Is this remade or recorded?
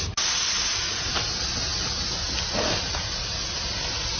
recorded